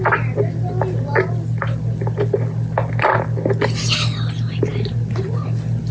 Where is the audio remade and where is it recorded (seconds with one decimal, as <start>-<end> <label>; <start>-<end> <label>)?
0.0-5.9 recorded